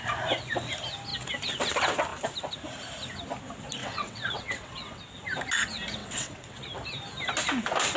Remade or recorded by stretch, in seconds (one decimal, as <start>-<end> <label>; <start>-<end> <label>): 0.0-3.8 recorded; 3.8-5.0 remade; 5.0-6.0 recorded; 6.0-6.6 remade; 6.6-8.0 recorded